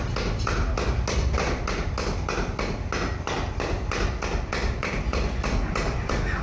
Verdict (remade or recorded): recorded